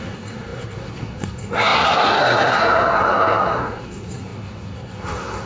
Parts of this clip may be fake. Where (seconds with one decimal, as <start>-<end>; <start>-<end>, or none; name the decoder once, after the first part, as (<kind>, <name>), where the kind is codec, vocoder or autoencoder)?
0.0-5.5 (codec, SNAC)